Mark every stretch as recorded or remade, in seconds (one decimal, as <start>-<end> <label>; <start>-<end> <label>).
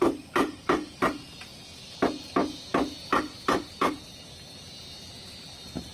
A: 0.0-5.9 recorded